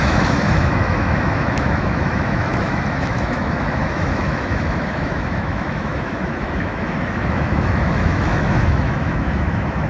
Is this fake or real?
fake